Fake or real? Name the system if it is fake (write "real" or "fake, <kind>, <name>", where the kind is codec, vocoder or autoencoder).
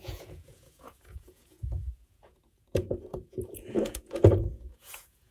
fake, vocoder, Vocos